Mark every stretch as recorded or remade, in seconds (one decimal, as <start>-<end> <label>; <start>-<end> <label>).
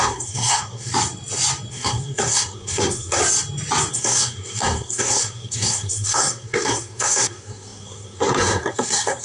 0.0-0.9 remade; 0.9-1.7 recorded; 1.7-3.2 remade; 3.2-3.9 recorded; 3.9-9.2 remade